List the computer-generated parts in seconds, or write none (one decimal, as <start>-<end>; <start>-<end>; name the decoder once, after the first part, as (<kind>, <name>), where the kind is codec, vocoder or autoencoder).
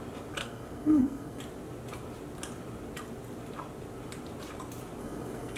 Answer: 0.4-1.4 (codec, SNAC); 5.0-5.6